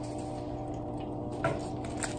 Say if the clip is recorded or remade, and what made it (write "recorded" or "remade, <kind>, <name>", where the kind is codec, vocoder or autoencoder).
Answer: recorded